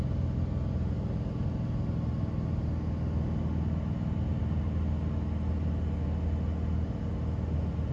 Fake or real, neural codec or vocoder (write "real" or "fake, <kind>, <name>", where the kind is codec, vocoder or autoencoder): real